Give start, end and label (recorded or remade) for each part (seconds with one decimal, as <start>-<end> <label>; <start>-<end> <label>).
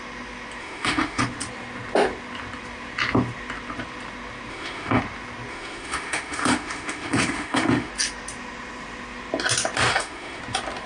0.0-0.6 recorded; 0.6-1.2 remade; 1.2-4.5 recorded; 4.5-5.0 remade; 5.0-5.5 recorded; 5.5-7.9 remade; 7.9-9.9 recorded; 9.9-10.4 remade; 10.4-10.9 recorded